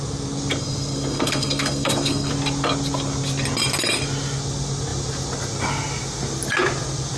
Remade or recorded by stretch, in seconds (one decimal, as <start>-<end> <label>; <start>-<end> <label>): 0.0-0.6 recorded; 0.6-2.3 remade; 2.3-7.2 recorded